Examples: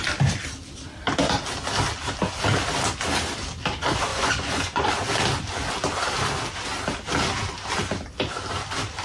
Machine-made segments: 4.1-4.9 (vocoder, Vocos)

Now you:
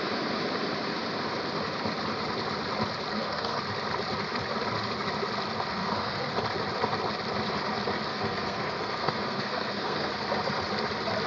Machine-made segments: 3.1-3.6 (codec, SNAC); 5.8-6.4; 8.1-10.1

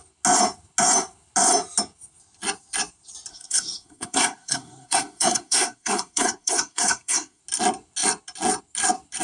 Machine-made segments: 3.3-7.4 (codec, SNAC)

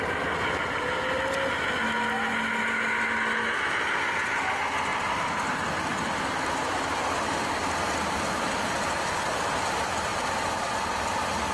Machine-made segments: none

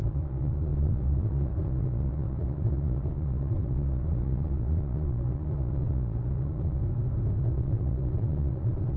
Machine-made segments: 0.0-6.8 (vocoder, Vocos); 7.4-9.0

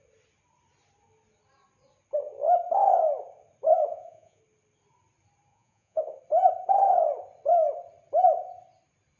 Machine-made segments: 3.7-4.4 (vocoder, Vocos); 5.5-6.2